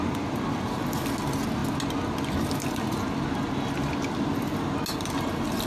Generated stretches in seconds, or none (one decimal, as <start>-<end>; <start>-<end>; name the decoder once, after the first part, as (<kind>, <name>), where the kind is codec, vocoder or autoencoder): none